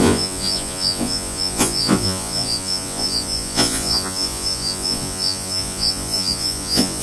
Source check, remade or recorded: remade